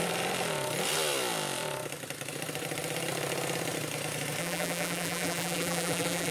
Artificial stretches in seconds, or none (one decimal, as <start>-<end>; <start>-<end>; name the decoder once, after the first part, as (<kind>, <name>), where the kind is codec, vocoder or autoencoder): 4.4-6.3 (vocoder, BigVGAN v2)